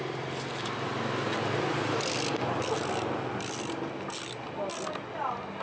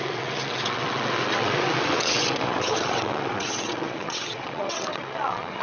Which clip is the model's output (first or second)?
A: second